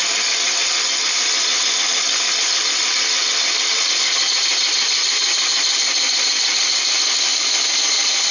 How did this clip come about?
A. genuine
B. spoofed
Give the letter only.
B